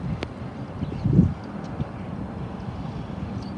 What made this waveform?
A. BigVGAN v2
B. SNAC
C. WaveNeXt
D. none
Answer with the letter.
D